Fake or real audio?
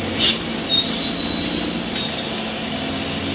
real